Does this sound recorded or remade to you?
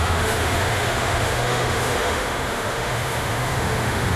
remade